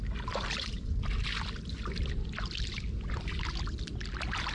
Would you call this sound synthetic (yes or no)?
no